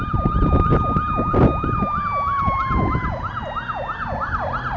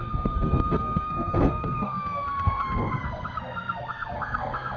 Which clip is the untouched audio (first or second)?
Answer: first